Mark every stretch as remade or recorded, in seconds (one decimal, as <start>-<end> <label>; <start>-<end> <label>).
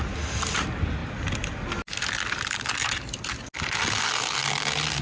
0.0-5.0 recorded